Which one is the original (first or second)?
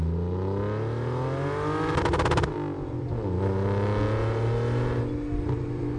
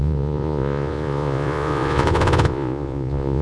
first